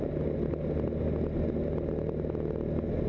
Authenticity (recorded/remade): recorded